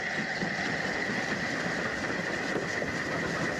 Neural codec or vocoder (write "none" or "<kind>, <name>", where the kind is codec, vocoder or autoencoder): none